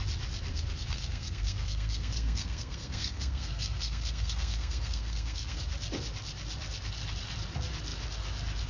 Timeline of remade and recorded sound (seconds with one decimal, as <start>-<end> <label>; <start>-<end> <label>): 0.0-0.5 recorded; 0.5-5.6 remade; 5.6-8.7 recorded